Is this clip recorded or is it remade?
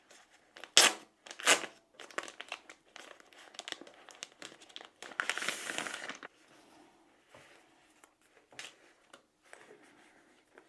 recorded